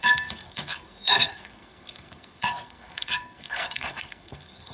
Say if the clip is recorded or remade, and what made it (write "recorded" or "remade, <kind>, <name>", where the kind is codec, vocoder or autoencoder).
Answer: remade, codec, SNAC